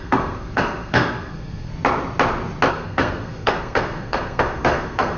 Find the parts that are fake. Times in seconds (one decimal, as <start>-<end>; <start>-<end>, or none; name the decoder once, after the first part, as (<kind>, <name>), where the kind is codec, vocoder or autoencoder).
0.0-1.7 (codec, SNAC); 2.7-5.2